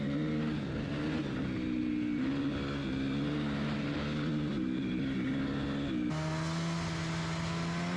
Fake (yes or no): no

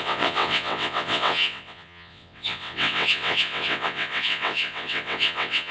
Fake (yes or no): yes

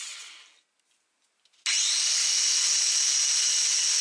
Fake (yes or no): no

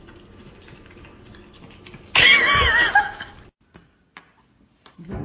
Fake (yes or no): no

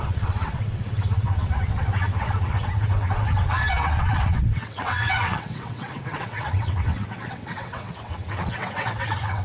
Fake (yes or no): yes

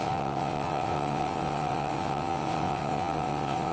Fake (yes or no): yes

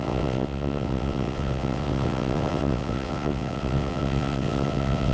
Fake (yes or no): yes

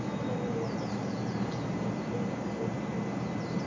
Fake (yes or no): no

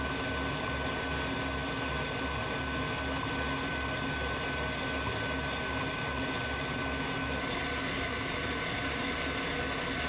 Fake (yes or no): no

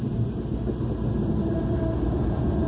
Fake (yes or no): no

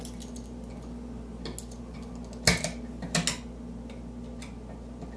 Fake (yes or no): no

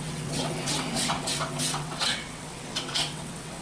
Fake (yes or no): yes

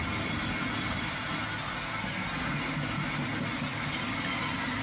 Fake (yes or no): no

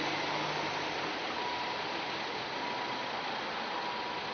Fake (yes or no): no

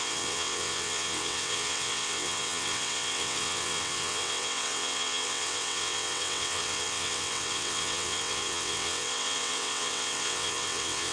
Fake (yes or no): yes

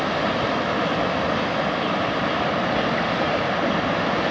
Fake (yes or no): no